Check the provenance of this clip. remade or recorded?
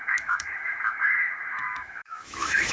remade